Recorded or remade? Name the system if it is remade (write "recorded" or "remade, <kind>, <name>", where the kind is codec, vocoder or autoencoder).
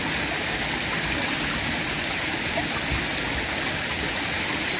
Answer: recorded